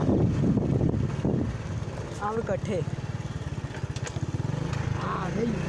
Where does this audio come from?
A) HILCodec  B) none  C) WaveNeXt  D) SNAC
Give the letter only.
B